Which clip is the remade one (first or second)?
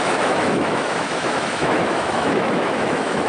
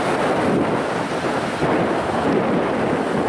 first